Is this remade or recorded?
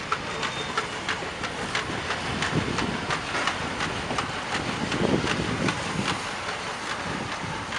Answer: recorded